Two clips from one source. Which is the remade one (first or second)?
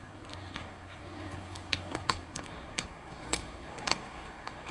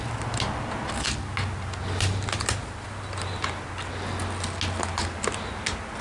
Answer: first